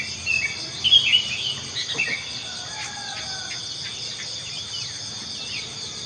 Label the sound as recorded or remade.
recorded